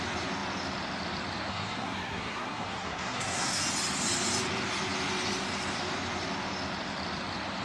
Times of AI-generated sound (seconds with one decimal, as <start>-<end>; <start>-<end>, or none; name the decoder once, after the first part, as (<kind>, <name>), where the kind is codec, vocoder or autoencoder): 1.5-3.6 (codec, SNAC)